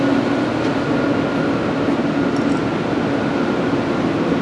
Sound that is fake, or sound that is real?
real